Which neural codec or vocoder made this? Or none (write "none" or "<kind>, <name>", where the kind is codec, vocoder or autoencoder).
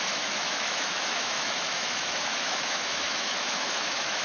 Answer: autoencoder, DAC-VAE